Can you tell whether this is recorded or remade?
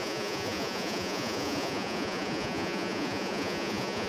remade